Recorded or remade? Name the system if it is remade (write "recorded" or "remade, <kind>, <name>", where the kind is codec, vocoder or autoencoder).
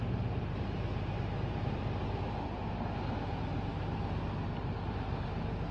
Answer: recorded